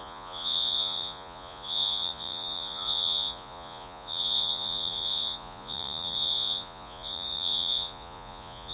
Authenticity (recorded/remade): remade